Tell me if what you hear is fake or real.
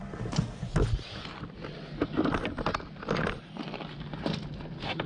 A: real